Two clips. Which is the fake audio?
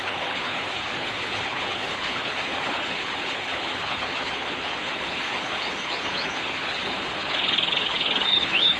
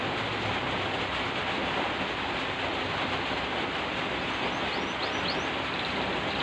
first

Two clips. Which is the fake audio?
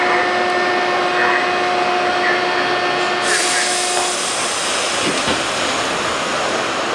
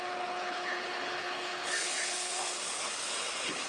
second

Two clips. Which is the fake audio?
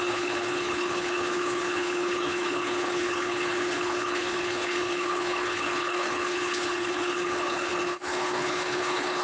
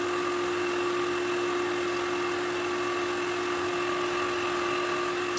first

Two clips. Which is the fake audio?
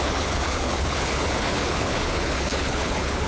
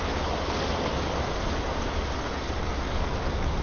first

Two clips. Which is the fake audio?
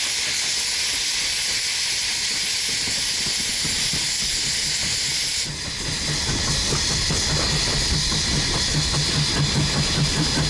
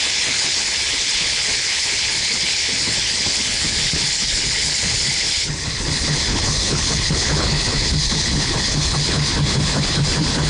second